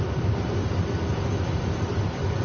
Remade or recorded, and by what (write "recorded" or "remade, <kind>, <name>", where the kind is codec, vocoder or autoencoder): remade, vocoder, BigVGAN v2